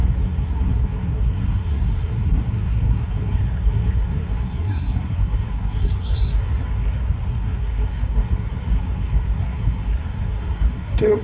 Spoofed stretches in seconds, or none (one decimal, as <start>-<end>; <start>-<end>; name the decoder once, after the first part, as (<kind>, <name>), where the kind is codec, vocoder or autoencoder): 0.0-11.2 (codec, SNAC)